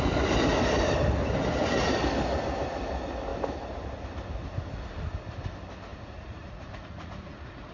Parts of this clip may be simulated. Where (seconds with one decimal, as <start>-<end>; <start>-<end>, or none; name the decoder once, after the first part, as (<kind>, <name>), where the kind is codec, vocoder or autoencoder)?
5.9-7.7 (vocoder, Vocos)